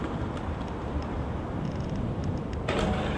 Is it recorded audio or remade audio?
remade